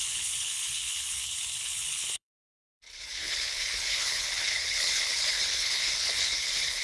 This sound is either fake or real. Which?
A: fake